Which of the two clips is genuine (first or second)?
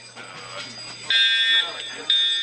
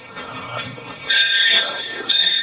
first